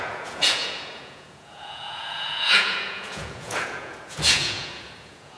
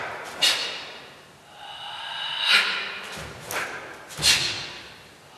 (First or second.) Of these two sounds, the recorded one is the second